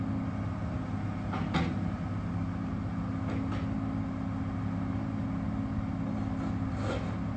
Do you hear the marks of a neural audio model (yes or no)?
no